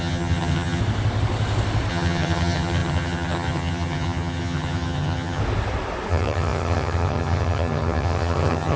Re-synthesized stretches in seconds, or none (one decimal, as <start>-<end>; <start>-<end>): 0.0-0.8; 1.9-5.4; 6.1-8.8